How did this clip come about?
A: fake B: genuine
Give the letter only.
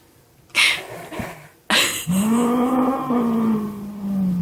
B